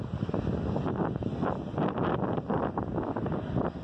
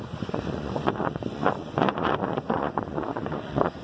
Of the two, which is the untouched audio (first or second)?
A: first